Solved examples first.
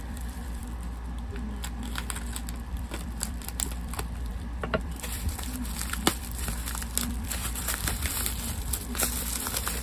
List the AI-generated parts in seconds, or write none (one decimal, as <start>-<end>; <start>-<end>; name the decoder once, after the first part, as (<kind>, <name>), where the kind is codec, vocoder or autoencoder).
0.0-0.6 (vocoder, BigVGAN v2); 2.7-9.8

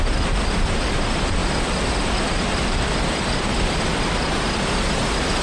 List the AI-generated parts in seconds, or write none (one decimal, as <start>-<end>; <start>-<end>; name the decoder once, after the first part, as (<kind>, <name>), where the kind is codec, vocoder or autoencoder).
none

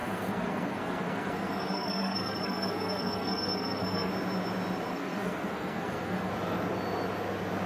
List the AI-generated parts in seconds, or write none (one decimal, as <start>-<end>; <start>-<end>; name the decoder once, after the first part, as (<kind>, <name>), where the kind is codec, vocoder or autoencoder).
0.0-4.1 (codec, SNAC); 4.9-6.3

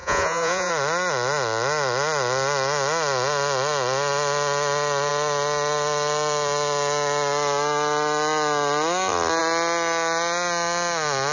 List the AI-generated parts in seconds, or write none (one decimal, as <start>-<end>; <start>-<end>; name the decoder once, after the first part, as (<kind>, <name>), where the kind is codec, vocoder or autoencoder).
0.0-0.7 (vocoder, Vocos)

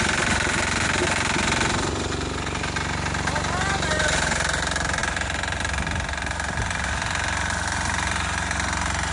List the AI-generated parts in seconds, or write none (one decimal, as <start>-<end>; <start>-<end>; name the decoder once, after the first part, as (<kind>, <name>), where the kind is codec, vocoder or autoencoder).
none

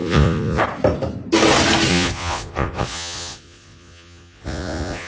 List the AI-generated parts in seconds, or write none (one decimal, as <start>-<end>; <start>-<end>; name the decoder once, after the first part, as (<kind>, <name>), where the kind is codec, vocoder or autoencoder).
0.0-0.6 (vocoder, Vocos); 1.9-5.1

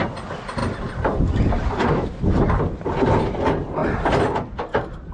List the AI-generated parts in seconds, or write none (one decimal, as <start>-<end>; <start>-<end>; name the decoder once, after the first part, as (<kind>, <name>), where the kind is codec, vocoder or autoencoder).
none